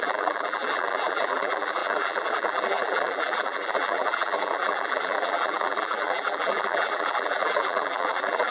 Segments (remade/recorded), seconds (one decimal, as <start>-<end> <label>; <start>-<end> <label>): 0.0-8.5 remade